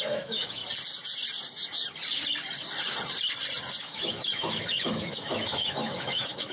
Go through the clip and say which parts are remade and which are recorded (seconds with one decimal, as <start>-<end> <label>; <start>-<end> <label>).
0.0-0.6 remade; 0.6-3.8 recorded; 3.8-6.5 remade